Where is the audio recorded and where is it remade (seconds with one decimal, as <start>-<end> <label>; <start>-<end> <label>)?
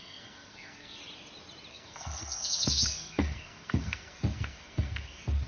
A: 0.0-1.0 remade; 1.0-1.7 recorded; 1.7-5.5 remade